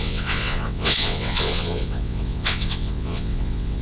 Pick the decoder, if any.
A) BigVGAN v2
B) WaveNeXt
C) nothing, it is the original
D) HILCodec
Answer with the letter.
B